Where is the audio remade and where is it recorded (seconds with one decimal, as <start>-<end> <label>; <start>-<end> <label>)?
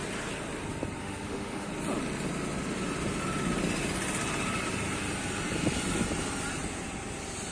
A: 0.0-1.0 recorded; 1.0-1.7 remade; 1.7-7.5 recorded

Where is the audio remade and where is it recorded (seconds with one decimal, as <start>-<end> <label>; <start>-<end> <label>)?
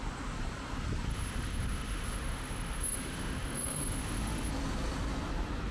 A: 0.0-1.1 recorded; 1.1-4.5 remade; 4.5-5.7 recorded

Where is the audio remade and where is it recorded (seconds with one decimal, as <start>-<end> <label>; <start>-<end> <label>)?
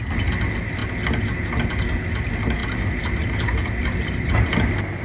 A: 0.0-5.0 recorded